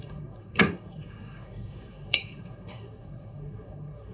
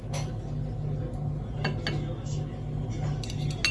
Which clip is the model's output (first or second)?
first